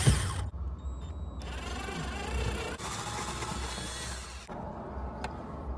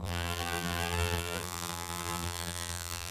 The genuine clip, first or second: first